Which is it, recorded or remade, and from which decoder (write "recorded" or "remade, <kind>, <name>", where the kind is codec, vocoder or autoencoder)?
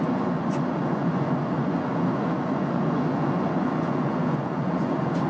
remade, vocoder, Vocos